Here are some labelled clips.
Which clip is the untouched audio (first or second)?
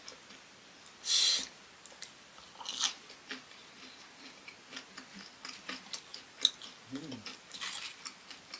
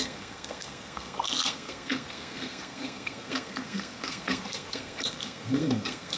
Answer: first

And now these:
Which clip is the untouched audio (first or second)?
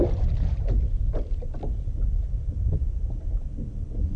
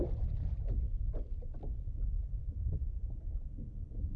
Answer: first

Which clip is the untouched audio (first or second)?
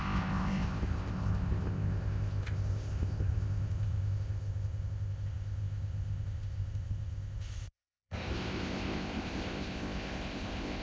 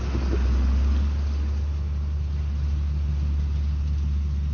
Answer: second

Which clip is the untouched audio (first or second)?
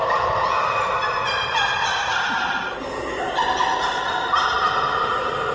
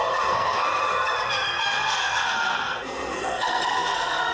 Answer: first